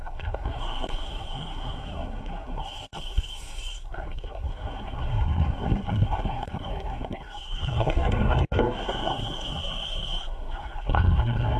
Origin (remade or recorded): remade